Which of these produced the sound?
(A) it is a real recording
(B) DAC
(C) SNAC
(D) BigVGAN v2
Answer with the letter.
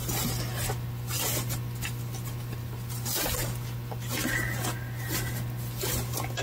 A